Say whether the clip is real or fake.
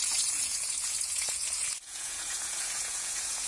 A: fake